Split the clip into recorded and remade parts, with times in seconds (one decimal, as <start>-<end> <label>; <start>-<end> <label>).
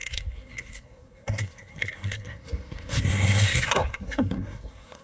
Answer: 0.0-5.0 remade